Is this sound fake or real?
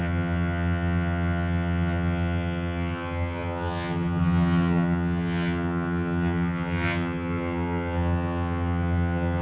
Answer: fake